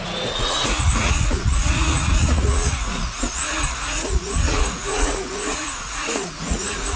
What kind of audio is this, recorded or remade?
remade